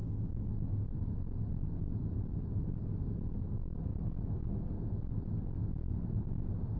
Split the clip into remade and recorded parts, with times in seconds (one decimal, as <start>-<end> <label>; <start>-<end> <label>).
0.0-6.8 recorded

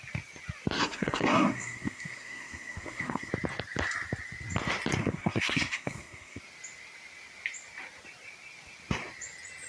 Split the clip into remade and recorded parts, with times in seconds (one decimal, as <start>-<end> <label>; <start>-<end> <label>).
0.0-0.8 recorded; 0.8-3.3 remade; 3.3-5.0 recorded; 5.0-6.4 remade; 6.4-9.7 recorded

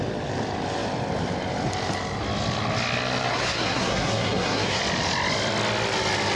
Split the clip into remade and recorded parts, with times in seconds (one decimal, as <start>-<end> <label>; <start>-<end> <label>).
0.0-3.3 recorded; 3.3-4.8 remade; 4.8-6.4 recorded